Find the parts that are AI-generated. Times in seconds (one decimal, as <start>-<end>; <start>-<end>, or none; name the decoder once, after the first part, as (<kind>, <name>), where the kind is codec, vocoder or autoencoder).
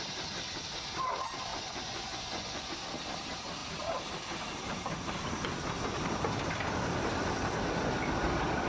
1.5-2.7 (vocoder, Vocos)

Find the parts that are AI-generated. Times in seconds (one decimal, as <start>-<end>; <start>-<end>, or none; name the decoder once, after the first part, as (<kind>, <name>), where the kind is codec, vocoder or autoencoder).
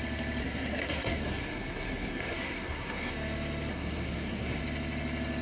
0.4-3.1 (codec, SNAC); 3.7-4.6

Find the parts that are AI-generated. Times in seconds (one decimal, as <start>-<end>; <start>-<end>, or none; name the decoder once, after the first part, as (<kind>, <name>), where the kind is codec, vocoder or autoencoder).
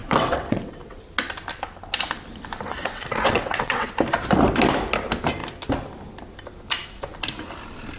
0.0-1.0 (vocoder, WaveNeXt); 2.8-3.9